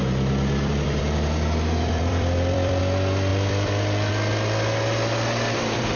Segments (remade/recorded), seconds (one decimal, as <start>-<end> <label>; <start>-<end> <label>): 0.0-2.8 remade; 2.8-3.3 recorded; 3.3-4.1 remade; 4.1-6.0 recorded